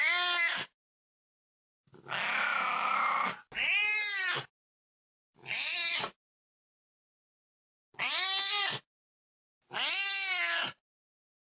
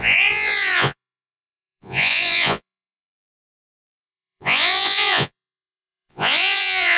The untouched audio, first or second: first